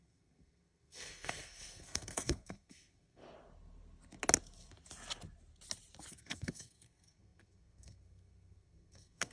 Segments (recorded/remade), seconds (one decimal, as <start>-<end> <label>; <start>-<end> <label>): 0.0-3.2 remade; 3.2-6.1 recorded; 6.1-9.3 remade